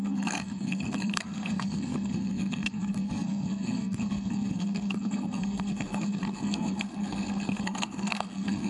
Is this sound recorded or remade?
remade